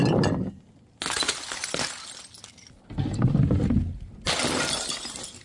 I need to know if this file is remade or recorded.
recorded